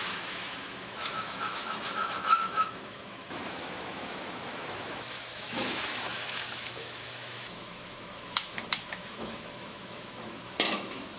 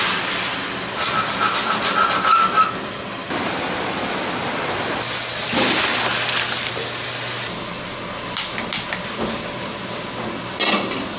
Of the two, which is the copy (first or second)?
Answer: first